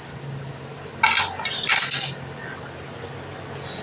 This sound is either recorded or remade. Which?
recorded